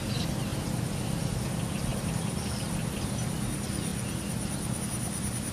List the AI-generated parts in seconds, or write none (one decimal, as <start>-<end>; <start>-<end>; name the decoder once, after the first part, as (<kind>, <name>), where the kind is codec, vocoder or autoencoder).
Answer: 1.9-2.5 (vocoder, BigVGAN v2)